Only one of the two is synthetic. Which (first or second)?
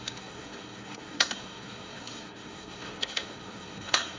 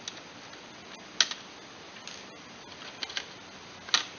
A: first